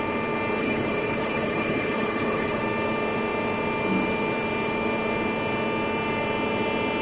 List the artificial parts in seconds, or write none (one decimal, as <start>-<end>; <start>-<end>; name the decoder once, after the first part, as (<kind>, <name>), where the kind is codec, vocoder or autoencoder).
0.6-2.6 (codec, HILCodec)